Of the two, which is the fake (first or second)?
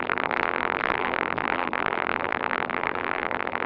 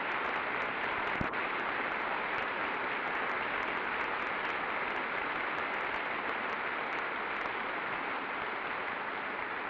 first